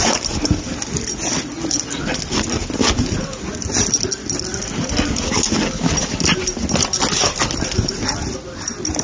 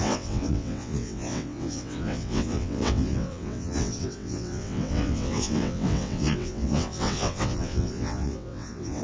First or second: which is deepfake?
second